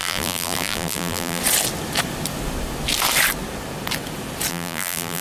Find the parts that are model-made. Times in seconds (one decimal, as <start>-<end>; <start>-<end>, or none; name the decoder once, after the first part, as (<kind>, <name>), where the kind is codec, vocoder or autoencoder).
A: 0.0-1.4 (vocoder, BigVGAN v2); 4.5-5.2